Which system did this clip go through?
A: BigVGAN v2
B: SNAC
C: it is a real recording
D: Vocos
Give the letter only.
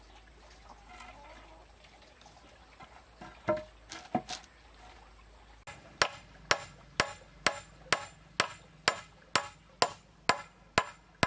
C